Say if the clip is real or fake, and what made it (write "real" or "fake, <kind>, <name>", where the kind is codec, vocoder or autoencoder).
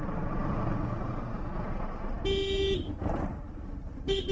real